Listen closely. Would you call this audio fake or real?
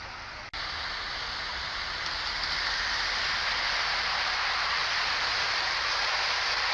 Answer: real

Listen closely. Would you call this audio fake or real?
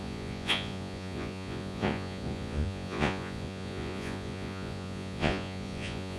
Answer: fake